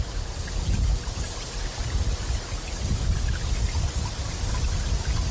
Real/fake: real